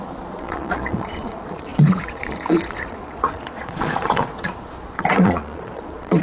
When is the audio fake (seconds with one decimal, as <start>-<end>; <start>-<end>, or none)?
0.0-6.2